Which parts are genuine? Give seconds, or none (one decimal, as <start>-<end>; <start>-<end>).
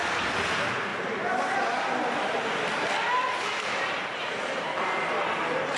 0.0-0.9; 4.4-5.8